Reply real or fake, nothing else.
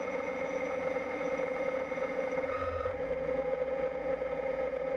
fake